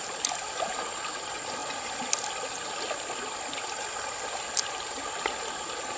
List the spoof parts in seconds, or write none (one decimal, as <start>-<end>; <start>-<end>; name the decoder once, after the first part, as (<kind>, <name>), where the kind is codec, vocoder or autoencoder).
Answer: none

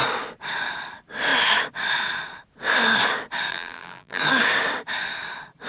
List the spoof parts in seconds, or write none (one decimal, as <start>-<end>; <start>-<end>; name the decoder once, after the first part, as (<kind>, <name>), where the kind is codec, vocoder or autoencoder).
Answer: 3.5-4.2 (vocoder, BigVGAN v2)

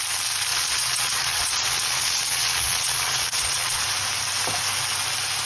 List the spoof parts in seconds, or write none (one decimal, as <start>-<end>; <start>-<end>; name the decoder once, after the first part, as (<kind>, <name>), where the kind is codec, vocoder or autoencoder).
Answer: 0.5-3.8 (vocoder, Vocos)